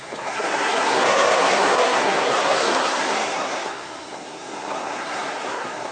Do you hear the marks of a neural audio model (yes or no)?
yes